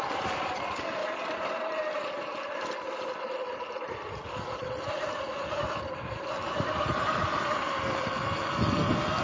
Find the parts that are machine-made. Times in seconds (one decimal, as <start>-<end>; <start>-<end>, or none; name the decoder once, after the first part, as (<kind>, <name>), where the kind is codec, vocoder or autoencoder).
none